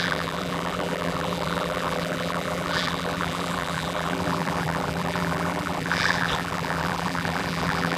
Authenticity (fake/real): fake